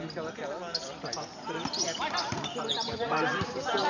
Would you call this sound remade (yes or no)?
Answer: no